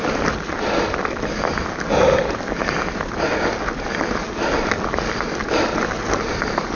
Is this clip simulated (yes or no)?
no